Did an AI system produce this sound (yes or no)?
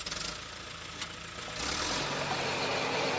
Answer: no